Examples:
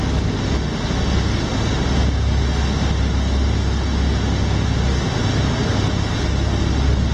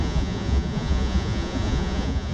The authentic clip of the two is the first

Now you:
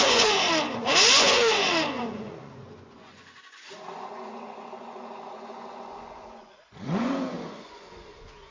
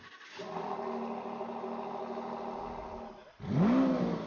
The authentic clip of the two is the second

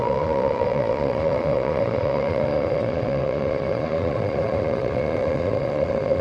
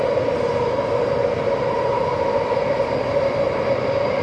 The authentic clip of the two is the second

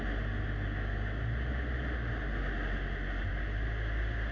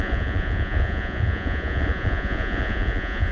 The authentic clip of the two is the first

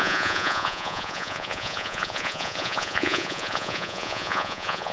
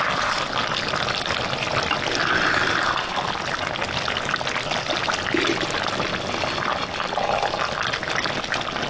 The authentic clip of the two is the second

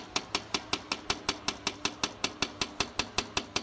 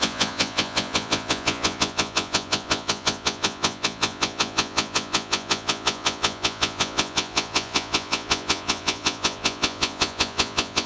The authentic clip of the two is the first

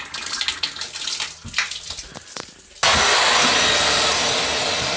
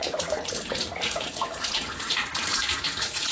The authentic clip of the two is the first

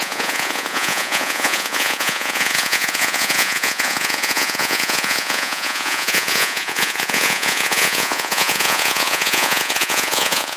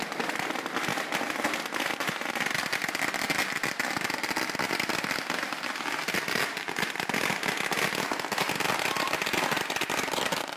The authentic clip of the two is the second